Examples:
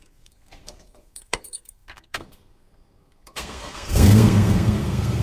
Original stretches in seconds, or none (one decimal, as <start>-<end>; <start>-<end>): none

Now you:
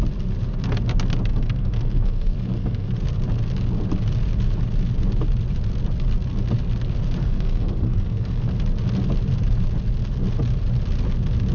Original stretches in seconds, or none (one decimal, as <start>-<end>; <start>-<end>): 0.0-1.3; 2.9-7.2; 8.5-11.5

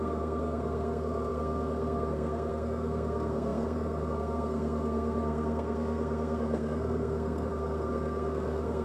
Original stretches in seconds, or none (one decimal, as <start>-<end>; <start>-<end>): none

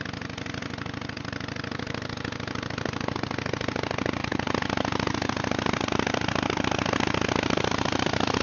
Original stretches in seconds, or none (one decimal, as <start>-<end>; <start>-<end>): 0.0-8.4

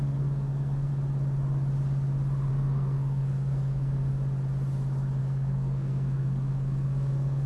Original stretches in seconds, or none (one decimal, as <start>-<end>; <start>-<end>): 0.9-2.5; 4.1-5.2